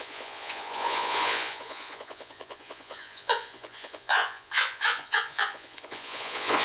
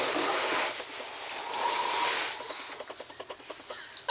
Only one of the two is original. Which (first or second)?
second